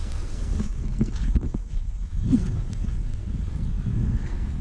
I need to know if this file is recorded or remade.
remade